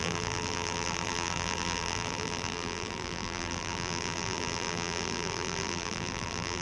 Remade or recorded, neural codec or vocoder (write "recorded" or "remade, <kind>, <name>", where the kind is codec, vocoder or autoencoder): remade, vocoder, BigVGAN v2